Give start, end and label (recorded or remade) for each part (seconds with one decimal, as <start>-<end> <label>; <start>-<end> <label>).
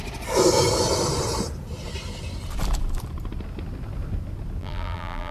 0.0-4.6 recorded; 4.6-5.3 remade